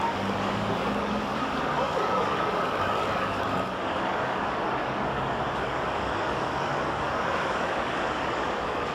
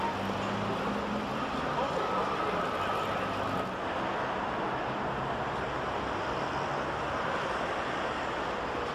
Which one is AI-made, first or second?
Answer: first